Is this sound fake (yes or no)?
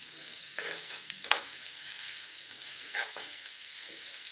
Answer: yes